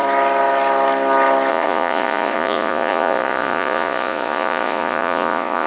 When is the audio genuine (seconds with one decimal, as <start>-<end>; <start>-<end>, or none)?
0.0-1.5